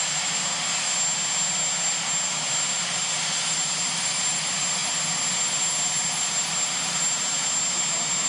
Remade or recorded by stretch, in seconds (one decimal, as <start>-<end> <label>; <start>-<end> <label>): 0.0-8.3 recorded